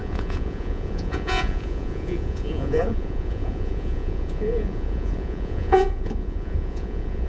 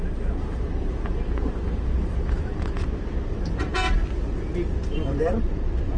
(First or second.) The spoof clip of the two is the first